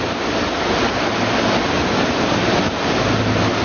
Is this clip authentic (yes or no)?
yes